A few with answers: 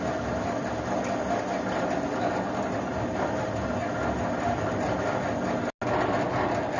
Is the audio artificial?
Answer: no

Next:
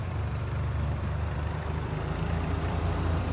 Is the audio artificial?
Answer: yes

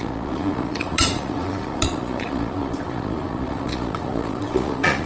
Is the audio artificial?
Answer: yes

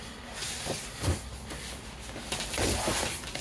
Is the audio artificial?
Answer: no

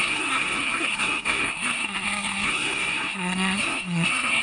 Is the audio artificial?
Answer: yes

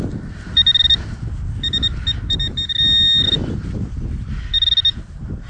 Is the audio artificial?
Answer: no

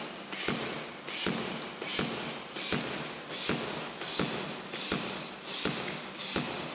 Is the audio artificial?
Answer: no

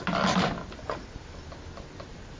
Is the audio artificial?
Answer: no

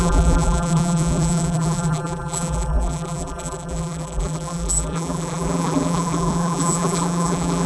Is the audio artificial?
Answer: yes